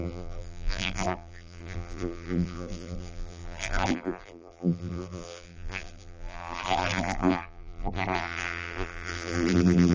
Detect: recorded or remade remade